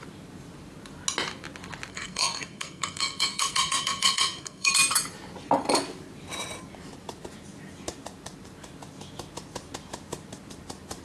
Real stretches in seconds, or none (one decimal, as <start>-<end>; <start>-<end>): 0.0-1.9; 4.7-11.0